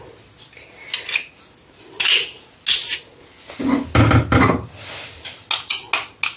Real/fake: real